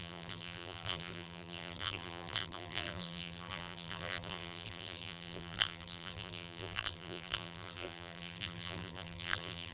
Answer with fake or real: fake